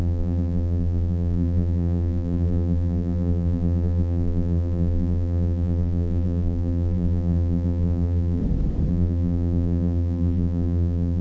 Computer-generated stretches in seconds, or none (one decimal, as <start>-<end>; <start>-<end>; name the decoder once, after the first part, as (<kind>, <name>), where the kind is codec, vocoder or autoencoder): 0.0-8.4 (vocoder, BigVGAN v2); 8.9-11.2